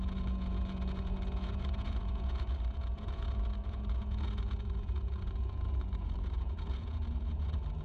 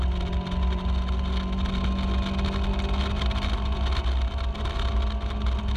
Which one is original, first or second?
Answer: second